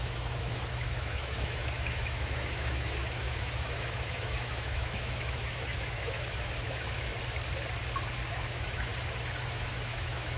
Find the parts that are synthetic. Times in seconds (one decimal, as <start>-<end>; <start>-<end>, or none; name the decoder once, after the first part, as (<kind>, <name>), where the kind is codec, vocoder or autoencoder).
0.0-7.1 (autoencoder, DAC-VAE); 8.3-8.9; 9.4-10.4